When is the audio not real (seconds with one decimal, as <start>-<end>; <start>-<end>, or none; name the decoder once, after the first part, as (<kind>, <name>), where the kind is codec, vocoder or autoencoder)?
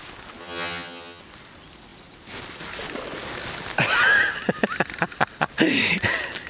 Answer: 0.4-1.2 (vocoder, HiFi-GAN)